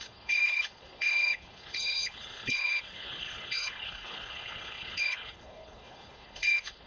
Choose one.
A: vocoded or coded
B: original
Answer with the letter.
A